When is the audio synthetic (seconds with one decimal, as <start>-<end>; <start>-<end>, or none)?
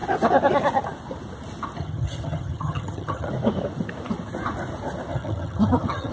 1.8-3.3; 5.1-6.1